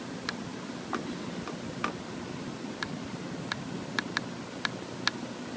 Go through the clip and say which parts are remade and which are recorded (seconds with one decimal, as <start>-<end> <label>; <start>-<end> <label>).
0.0-5.6 recorded